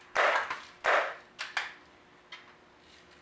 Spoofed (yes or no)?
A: no